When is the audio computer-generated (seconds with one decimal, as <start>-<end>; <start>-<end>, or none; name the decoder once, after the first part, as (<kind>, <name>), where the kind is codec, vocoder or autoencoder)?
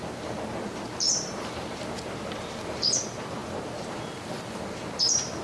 0.0-5.4 (vocoder, BigVGAN v2)